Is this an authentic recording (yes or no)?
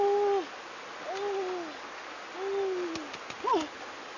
yes